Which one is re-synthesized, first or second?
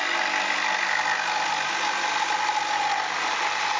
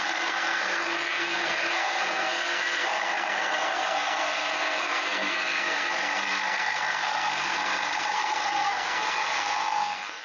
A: second